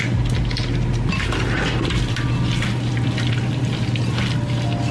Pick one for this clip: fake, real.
real